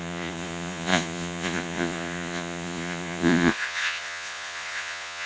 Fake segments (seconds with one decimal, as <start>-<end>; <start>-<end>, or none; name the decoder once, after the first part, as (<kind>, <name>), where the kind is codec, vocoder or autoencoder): 0.0-5.3 (vocoder, Vocos)